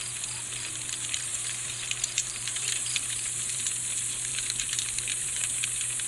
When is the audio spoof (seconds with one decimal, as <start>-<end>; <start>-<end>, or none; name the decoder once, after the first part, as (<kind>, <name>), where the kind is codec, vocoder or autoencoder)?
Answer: 1.3-3.6 (vocoder, BigVGAN v2); 4.3-5.5